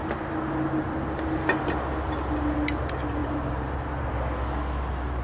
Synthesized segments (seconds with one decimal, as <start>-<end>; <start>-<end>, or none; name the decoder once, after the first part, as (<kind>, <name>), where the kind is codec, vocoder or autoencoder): 3.2-4.1 (vocoder, BigVGAN v2)